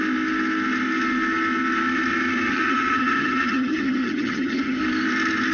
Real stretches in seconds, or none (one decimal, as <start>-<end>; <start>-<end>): 0.0-2.5; 4.8-5.5